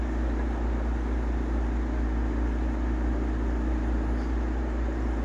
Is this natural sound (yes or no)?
yes